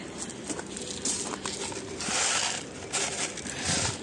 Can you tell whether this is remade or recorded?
recorded